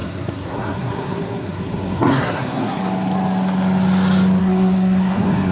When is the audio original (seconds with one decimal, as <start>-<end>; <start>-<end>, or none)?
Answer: 2.8-4.4

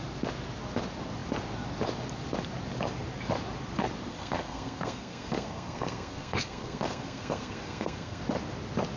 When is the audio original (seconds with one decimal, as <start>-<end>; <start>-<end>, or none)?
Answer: 0.0-4.1; 8.2-9.0

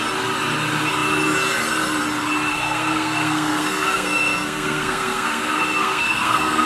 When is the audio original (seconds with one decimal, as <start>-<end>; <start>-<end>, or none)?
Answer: 0.0-2.5

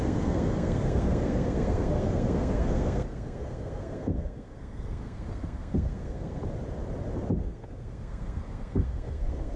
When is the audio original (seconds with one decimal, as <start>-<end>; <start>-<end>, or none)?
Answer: 6.4-7.4

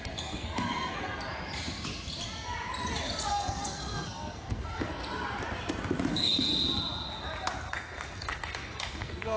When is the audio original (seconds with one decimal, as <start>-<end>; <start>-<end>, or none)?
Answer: 1.3-3.3; 5.0-6.1; 6.5-7.7

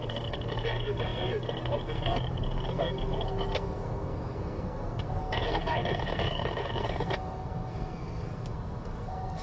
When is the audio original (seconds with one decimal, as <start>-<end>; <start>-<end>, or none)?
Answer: none

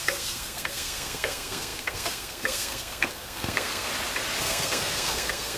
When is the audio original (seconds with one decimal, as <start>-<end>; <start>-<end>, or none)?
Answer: 3.9-4.4